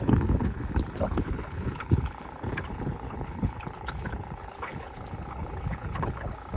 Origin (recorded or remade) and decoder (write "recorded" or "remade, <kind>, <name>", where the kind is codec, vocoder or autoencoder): remade, codec, HILCodec